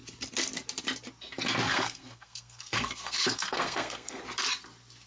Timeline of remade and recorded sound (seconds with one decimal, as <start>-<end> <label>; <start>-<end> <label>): 0.0-1.7 recorded; 1.7-4.2 remade; 4.2-5.1 recorded